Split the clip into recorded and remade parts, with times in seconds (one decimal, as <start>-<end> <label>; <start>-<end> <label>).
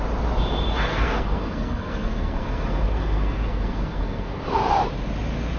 0.0-0.9 recorded; 0.9-4.3 remade; 4.3-5.6 recorded